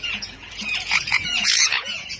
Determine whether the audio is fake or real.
fake